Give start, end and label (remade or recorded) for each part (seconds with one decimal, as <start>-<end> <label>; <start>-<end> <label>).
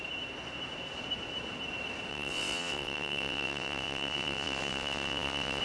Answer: 0.0-2.1 recorded; 2.1-5.6 remade